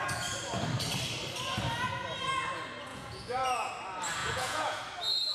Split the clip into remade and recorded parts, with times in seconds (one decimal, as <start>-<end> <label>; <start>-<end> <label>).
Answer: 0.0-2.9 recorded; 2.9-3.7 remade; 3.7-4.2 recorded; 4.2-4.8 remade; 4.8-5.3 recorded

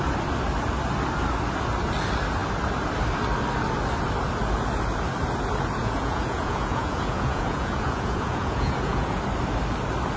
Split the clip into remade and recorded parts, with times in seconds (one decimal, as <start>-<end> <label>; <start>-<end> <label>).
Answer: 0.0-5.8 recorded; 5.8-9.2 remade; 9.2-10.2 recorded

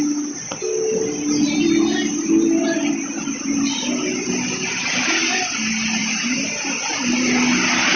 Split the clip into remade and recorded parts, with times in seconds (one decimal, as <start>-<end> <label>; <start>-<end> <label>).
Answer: 0.0-8.0 recorded

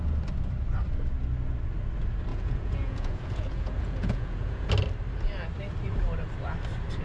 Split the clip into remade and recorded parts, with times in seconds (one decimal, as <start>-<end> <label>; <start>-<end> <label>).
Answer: 0.0-2.3 recorded; 2.3-4.7 remade; 4.7-7.0 recorded